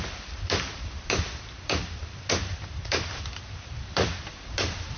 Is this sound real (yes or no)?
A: no